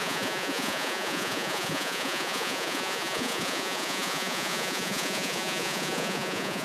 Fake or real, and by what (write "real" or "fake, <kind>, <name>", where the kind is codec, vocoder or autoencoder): fake, vocoder, Vocos